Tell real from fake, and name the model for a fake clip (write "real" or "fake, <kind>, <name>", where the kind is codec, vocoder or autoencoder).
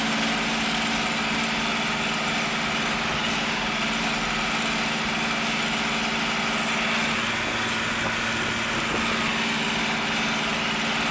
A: real